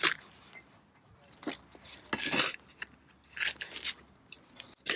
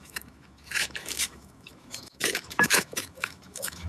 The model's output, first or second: second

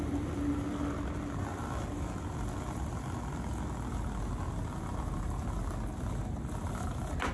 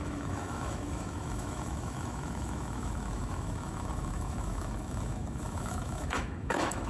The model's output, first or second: second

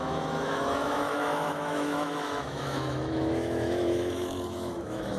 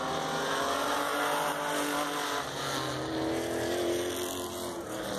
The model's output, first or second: first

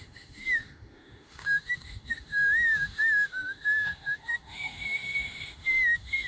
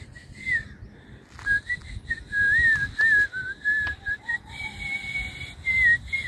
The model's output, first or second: first